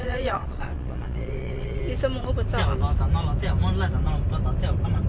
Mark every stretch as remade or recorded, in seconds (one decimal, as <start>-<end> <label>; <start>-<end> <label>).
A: 0.0-1.8 remade; 1.8-5.1 recorded